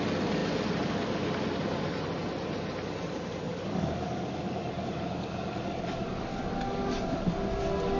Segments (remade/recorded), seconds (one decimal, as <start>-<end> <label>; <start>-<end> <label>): 0.0-3.5 recorded; 3.5-7.6 remade; 7.6-8.0 recorded